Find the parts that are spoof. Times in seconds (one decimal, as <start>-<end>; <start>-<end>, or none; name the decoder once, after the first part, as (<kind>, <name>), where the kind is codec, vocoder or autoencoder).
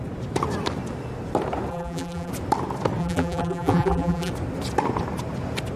1.7-2.3 (vocoder, BigVGAN v2); 3.0-4.3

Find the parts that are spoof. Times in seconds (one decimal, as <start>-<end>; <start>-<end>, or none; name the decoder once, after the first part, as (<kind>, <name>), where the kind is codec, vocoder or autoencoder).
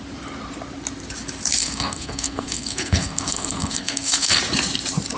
1.6-4.4 (codec, SNAC)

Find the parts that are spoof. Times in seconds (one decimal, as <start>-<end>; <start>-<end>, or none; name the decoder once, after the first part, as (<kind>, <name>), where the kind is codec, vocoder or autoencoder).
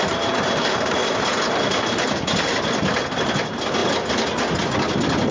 none